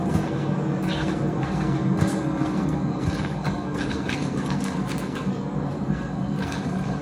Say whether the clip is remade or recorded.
remade